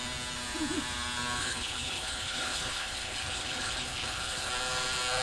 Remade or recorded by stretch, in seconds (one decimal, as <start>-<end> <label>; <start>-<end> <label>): 0.0-1.4 recorded; 1.4-4.5 remade; 4.5-5.2 recorded